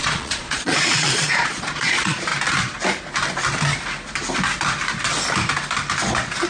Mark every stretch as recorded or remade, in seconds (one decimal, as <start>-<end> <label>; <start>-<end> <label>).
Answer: 0.0-2.3 remade; 2.3-6.5 recorded